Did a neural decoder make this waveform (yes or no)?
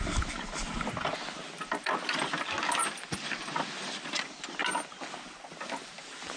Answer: no